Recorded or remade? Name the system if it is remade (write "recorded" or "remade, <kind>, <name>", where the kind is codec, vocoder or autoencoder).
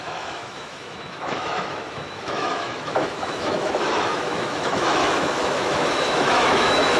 remade, autoencoder, DAC-VAE